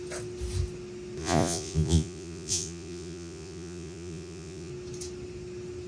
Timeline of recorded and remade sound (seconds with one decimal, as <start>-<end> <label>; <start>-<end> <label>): 0.0-1.2 recorded; 1.2-4.7 remade; 4.7-5.9 recorded